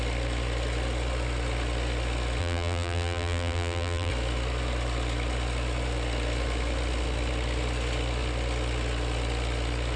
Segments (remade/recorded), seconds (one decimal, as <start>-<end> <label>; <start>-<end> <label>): 0.0-2.4 recorded; 2.4-4.1 remade; 4.1-10.0 recorded